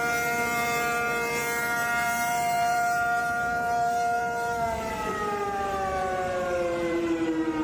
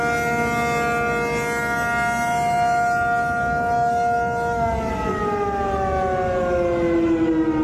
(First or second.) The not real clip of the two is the first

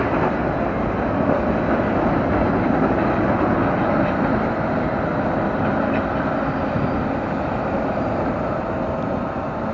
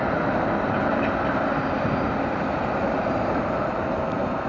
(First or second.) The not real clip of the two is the second